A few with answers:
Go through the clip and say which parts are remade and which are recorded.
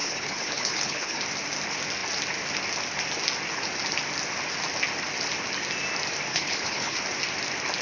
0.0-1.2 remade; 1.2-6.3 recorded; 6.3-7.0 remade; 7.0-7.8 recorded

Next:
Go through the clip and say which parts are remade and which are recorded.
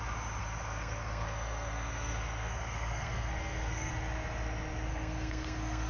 0.0-0.4 recorded; 0.4-3.9 remade; 3.9-4.9 recorded; 4.9-5.9 remade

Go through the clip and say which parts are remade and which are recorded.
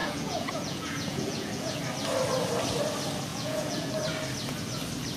0.0-1.8 remade; 1.8-3.3 recorded; 3.3-3.9 remade; 3.9-5.2 recorded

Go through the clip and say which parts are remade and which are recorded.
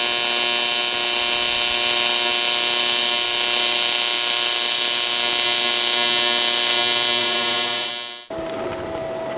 0.0-7.2 recorded; 7.2-7.9 remade; 7.9-9.4 recorded